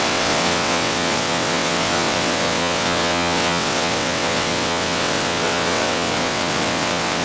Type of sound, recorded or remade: remade